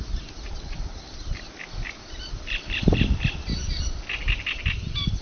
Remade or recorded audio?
recorded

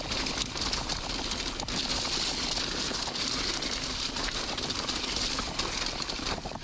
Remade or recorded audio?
recorded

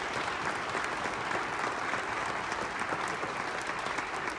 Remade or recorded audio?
recorded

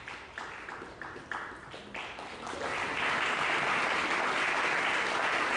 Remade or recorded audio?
recorded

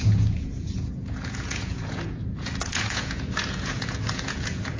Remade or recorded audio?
remade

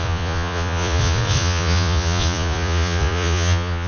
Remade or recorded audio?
remade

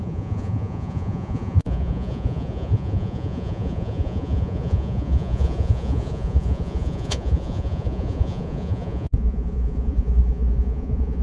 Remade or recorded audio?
remade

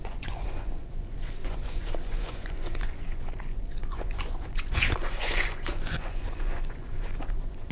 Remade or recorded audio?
remade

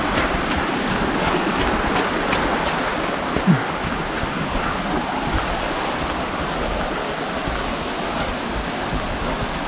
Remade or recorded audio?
recorded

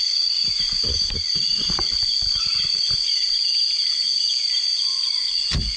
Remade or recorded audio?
recorded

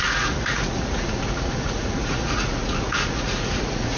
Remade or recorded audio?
remade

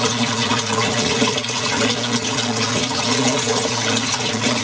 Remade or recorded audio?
remade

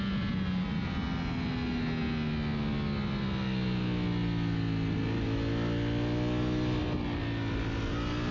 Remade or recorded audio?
recorded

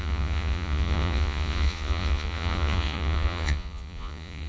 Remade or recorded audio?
remade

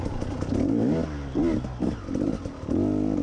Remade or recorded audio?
recorded